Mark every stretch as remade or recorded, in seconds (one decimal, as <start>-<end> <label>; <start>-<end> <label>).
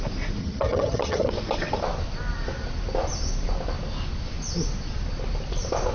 0.0-0.4 recorded; 0.4-1.3 remade; 1.3-5.9 recorded